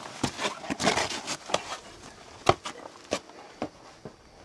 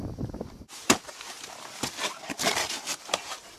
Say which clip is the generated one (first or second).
second